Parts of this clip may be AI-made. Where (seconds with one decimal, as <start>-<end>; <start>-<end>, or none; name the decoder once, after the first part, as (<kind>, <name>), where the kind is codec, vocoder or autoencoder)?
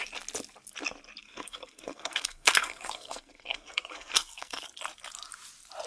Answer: 1.2-4.6 (codec, SNAC)